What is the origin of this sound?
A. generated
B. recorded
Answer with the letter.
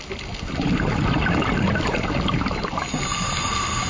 B